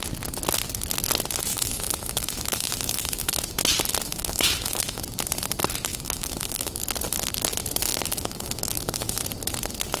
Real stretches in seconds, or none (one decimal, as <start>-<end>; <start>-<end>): 0.0-1.5; 3.4-4.1; 5.0-5.9; 6.8-7.9; 9.1-10.0